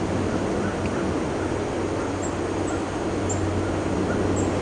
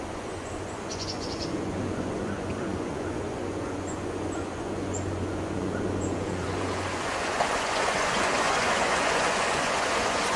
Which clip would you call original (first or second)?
first